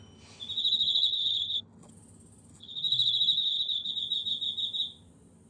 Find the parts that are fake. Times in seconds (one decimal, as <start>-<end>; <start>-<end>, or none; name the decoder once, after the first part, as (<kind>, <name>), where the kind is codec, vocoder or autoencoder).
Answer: 0.6-1.9 (codec, HILCodec); 2.5-3.9

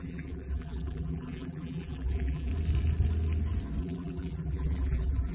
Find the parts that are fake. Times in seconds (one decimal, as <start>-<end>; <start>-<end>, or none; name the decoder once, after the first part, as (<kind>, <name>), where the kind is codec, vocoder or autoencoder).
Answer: 0.0-2.5 (vocoder, BigVGAN v2); 3.8-5.3

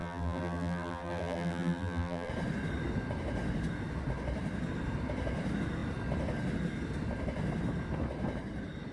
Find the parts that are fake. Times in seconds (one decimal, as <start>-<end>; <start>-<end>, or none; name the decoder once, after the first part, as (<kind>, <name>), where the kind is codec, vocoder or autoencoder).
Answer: 0.0-2.3 (vocoder, BigVGAN v2)

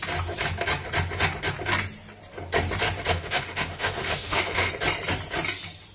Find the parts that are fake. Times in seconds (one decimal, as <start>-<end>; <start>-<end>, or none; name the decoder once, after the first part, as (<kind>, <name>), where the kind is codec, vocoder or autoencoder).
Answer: 3.1-4.7 (autoencoder, DAC-VAE)

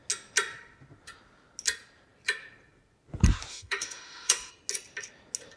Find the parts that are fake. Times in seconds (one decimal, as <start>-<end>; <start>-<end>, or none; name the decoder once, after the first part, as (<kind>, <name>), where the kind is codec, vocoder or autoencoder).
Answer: 3.5-4.5 (autoencoder, DAC-VAE)

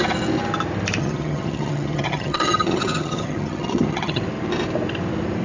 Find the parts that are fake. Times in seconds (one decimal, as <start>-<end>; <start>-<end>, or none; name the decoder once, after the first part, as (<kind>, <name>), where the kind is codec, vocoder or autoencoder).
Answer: 1.0-4.2 (vocoder, HiFi-GAN)

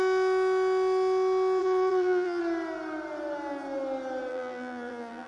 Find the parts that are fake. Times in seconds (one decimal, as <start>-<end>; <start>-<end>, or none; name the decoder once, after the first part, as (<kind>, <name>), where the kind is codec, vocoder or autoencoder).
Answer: 1.6-2.4 (vocoder, BigVGAN v2); 4.3-5.3